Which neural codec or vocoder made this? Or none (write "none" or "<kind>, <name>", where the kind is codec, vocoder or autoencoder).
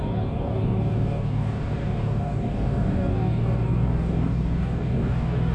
codec, DAC